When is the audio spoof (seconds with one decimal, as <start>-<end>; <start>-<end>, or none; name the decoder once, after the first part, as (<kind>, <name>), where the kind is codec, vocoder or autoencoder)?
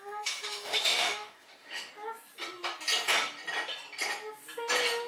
0.0-1.9 (autoencoder, DAC-VAE)